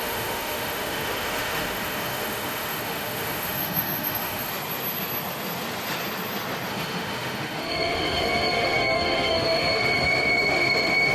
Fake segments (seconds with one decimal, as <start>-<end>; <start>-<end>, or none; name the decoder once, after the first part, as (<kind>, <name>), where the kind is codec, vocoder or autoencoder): 0.0-4.5 (autoencoder, DAC-VAE); 6.7-11.1